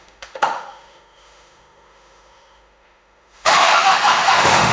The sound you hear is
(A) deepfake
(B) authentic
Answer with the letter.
A